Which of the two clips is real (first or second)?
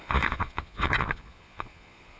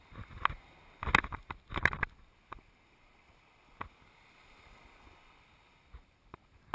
second